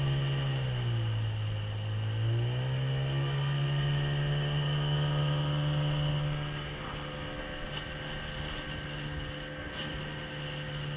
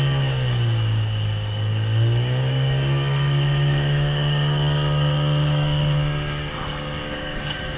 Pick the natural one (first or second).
first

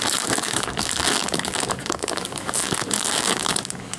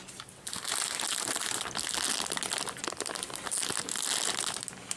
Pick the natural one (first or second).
second